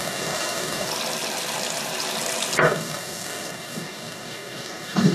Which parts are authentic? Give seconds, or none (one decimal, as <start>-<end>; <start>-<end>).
0.9-2.6